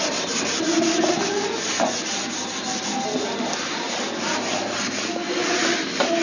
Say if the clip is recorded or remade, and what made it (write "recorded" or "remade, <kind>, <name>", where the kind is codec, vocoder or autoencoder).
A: recorded